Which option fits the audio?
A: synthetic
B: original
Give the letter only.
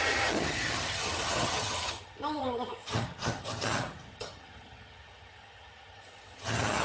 A